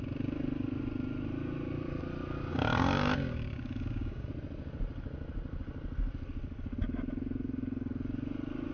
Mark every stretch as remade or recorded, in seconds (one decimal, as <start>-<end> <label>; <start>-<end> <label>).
0.0-2.5 recorded; 2.5-4.3 remade; 4.3-8.7 recorded